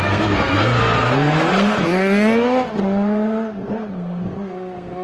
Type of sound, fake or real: fake